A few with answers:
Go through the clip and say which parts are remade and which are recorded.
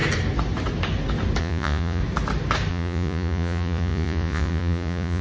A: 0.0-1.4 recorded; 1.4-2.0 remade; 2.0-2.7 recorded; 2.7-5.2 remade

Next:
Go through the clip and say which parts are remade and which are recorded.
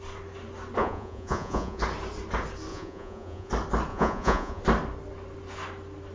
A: 0.0-0.8 recorded; 0.8-1.8 remade; 1.8-2.7 recorded; 2.7-3.5 remade; 3.5-3.9 recorded; 3.9-4.6 remade; 4.6-6.1 recorded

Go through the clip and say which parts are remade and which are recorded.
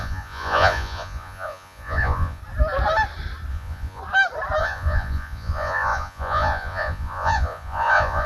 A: 0.0-2.4 remade; 2.4-3.5 recorded; 3.5-4.0 remade; 4.0-4.6 recorded; 4.6-8.3 remade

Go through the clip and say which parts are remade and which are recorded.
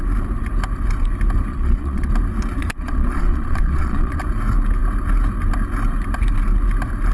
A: 0.0-1.5 recorded; 1.5-2.1 remade; 2.1-2.6 recorded; 2.6-4.2 remade; 4.2-7.1 recorded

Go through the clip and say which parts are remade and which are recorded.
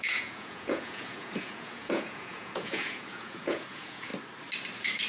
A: 0.0-4.1 remade; 4.1-5.1 recorded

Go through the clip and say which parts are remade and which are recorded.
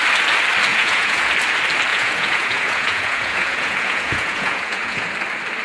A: 0.0-0.7 recorded; 0.7-1.3 remade; 1.3-1.9 recorded; 1.9-5.1 remade; 5.1-5.6 recorded